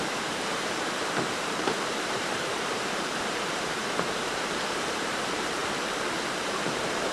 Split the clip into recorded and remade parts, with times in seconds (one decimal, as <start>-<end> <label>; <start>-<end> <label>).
0.0-5.6 remade; 5.6-6.4 recorded; 6.4-7.1 remade